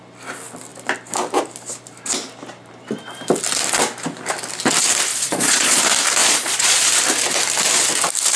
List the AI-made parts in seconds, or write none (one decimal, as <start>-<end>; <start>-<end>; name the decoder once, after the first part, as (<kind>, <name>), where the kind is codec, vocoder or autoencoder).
5.1-5.8 (vocoder, Vocos); 6.2-6.9